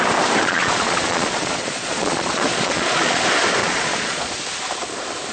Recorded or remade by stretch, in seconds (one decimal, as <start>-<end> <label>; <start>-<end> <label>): 0.0-0.4 recorded; 0.4-3.2 remade; 3.2-3.6 recorded; 3.6-4.3 remade; 4.3-5.3 recorded